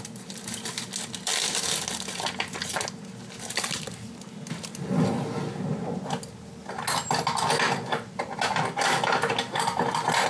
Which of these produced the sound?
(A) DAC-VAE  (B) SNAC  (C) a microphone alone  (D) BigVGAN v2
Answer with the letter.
C